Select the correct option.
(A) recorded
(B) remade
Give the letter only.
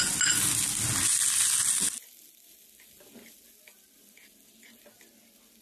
A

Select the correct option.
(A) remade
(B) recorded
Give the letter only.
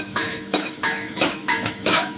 A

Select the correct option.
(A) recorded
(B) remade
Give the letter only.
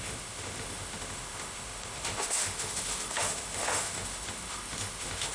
B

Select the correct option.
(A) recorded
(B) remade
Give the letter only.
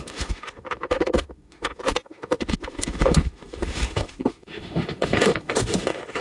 B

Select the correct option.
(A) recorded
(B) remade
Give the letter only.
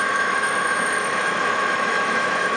B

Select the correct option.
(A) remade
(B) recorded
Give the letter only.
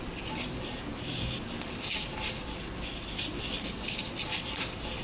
B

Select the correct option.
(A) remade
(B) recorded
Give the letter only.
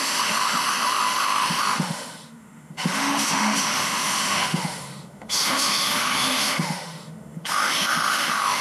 A